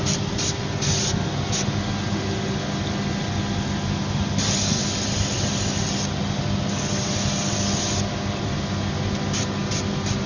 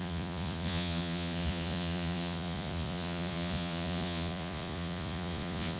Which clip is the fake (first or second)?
second